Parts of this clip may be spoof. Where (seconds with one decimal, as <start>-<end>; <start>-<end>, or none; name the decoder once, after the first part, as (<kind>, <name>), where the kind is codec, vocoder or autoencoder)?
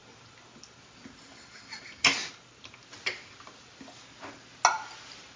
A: none